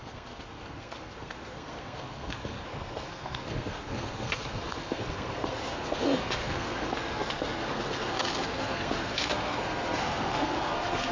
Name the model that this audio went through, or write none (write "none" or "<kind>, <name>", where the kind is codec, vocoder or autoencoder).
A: codec, SNAC